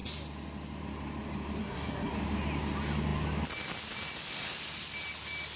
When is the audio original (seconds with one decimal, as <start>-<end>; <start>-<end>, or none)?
0.0-1.6; 2.1-5.6